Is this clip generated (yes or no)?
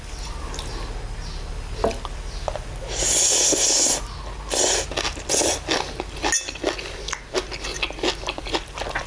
no